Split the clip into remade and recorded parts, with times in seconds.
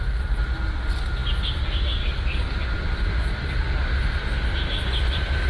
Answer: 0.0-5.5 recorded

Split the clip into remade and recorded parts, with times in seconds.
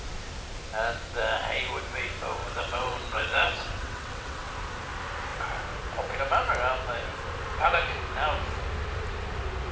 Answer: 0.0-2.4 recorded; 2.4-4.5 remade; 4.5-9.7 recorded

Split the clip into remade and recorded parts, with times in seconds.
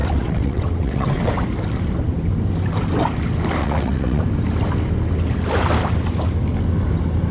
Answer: 0.0-1.3 remade; 1.3-3.6 recorded; 3.6-4.2 remade; 4.2-7.3 recorded